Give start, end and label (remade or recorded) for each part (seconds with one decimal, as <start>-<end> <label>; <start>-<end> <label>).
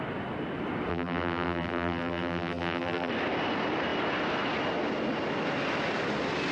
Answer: 0.0-0.9 recorded; 0.9-3.1 remade; 3.1-6.5 recorded